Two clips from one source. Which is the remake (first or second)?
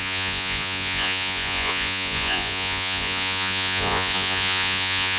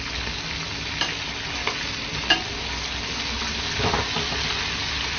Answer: first